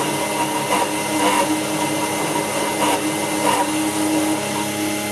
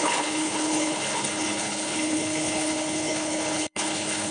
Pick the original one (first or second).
first